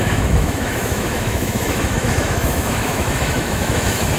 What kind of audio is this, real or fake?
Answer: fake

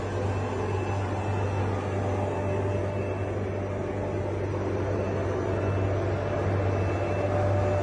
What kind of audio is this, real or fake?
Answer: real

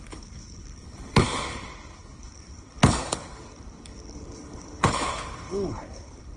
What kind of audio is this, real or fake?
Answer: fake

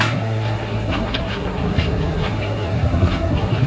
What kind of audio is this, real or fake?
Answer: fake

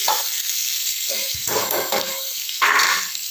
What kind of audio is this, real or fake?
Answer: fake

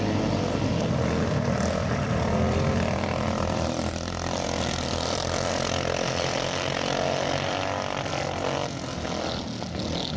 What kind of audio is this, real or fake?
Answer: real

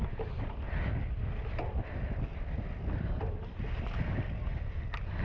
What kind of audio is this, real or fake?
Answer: real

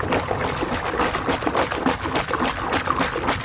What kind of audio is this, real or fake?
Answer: real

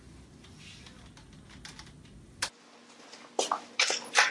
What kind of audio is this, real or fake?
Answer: real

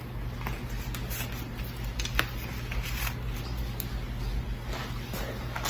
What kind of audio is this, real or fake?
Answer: real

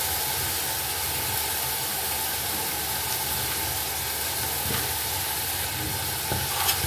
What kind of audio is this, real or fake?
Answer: real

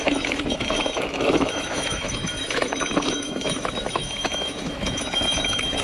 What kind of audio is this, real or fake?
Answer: fake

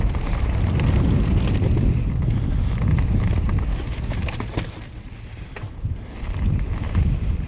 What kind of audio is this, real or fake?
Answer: real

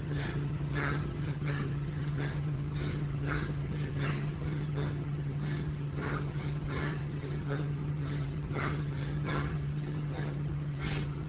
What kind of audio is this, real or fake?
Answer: fake